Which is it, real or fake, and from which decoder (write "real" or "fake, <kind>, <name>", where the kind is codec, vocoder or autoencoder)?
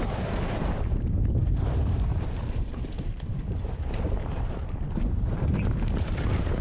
fake, vocoder, BigVGAN v2